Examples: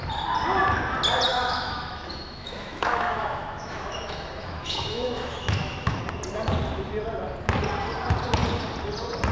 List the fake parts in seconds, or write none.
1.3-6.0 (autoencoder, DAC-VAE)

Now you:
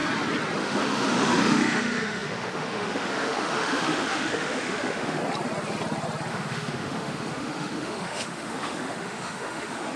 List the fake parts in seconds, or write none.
0.6-5.2 (autoencoder, DAC-VAE); 6.3-10.0

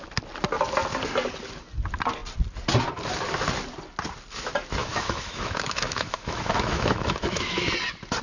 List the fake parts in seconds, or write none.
4.8-7.7 (autoencoder, DAC-VAE)

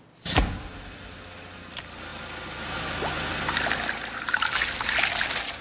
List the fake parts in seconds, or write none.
none

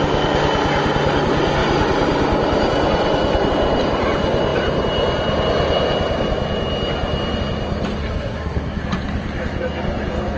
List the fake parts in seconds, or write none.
8.0-8.8 (codec, SNAC)